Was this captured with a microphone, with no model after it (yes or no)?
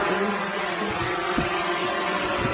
no